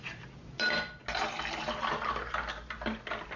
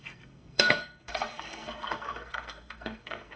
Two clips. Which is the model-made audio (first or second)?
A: second